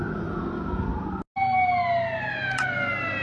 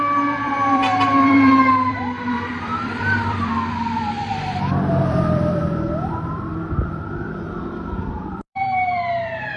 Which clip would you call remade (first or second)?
second